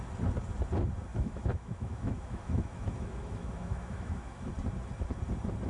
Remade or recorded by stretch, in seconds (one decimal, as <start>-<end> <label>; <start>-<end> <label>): 0.0-1.1 recorded; 1.1-4.5 remade; 4.5-5.7 recorded